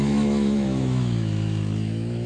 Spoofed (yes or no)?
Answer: yes